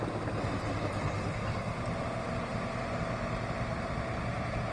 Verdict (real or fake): real